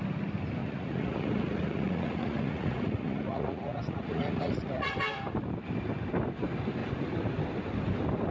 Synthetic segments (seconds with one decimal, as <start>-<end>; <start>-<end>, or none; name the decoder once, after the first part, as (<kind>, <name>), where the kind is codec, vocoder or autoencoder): 0.6-4.9 (vocoder, Vocos)